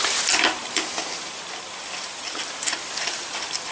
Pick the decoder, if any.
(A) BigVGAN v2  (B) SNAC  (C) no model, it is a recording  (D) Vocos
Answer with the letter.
A